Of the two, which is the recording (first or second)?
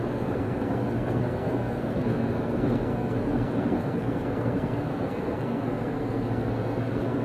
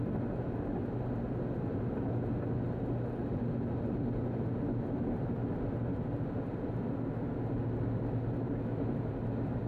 second